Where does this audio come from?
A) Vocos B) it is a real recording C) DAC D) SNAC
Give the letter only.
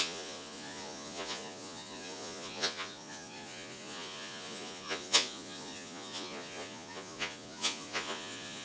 A